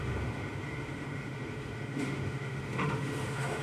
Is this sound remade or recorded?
remade